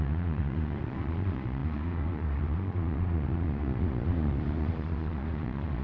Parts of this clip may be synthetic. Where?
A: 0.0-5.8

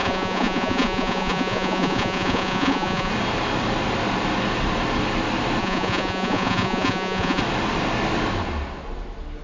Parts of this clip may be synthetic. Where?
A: 0.0-3.1; 5.6-7.4

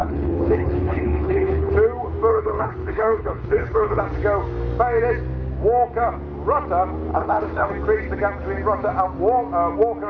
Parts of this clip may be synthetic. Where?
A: 0.0-1.7; 2.3-4.0; 7.1-7.7

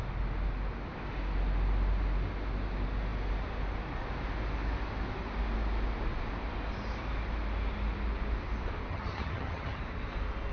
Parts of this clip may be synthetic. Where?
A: 8.9-9.8

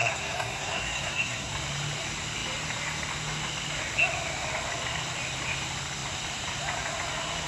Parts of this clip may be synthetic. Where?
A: 0.0-1.5

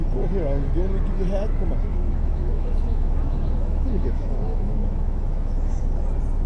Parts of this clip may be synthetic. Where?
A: 1.9-5.8

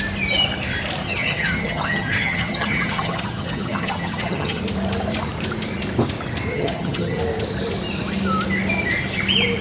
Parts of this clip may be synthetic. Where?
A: 1.0-4.6; 6.5-7.2

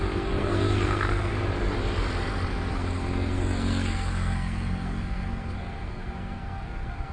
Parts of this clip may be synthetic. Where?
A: 0.0-1.3; 2.7-7.1